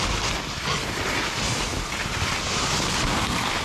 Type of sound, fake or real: real